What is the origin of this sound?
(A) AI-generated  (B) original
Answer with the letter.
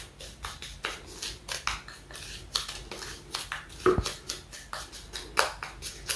B